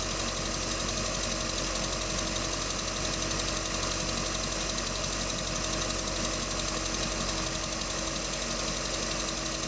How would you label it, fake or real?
real